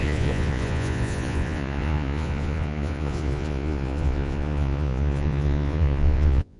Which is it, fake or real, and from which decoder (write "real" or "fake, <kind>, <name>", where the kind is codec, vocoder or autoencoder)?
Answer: fake, vocoder, Vocos